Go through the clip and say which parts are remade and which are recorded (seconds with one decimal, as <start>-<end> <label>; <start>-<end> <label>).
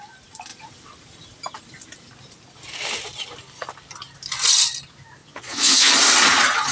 0.0-5.2 recorded; 5.2-5.9 remade; 5.9-6.7 recorded